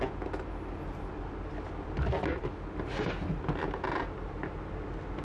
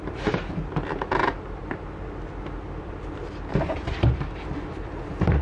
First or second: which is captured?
first